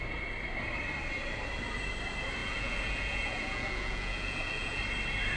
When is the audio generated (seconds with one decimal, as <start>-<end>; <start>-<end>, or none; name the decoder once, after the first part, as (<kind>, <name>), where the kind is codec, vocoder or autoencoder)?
2.4-4.8 (vocoder, Vocos)